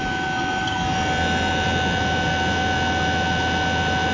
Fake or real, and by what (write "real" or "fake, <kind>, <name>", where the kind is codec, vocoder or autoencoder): real